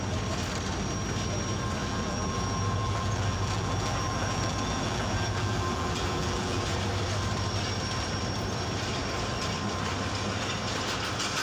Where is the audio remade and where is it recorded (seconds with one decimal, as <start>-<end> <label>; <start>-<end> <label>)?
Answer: 0.0-1.8 recorded; 1.8-6.7 remade; 6.7-11.4 recorded